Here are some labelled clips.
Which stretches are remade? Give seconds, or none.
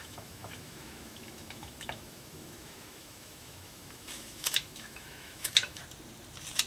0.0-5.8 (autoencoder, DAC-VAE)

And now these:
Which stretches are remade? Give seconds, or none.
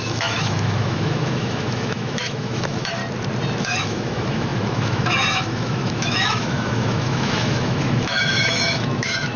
0.0-3.0 (autoencoder, DAC-VAE); 3.6-9.4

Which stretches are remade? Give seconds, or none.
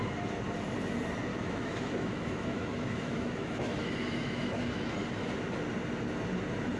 1.3-4.9 (autoencoder, DAC-VAE)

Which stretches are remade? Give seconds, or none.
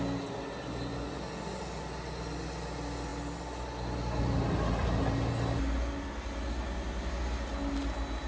none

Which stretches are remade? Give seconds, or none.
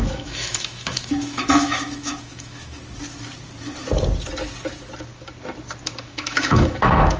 0.0-2.8 (autoencoder, DAC-VAE); 6.0-7.2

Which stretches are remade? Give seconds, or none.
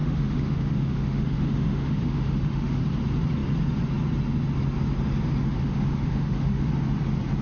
0.0-2.8 (autoencoder, DAC-VAE); 5.5-6.7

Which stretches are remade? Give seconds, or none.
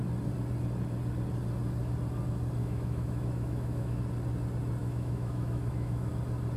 2.6-4.0 (autoencoder, DAC-VAE); 4.8-6.1